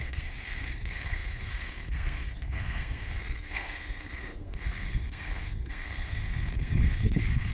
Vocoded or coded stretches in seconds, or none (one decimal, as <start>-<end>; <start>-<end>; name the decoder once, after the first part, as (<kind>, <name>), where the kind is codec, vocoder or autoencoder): 0.0-7.5 (codec, SNAC)